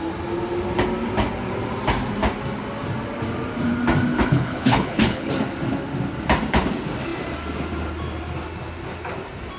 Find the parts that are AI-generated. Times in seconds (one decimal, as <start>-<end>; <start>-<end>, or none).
4.1-5.3